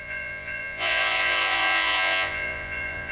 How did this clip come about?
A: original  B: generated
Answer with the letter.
B